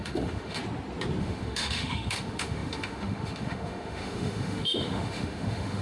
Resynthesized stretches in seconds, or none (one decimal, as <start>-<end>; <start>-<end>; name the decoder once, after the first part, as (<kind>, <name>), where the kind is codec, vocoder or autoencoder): 0.0-0.6 (autoencoder, DAC-VAE); 1.2-5.8